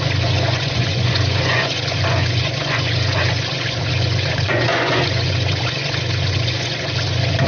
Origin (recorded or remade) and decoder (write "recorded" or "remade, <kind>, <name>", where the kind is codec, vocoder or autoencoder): remade, vocoder, Vocos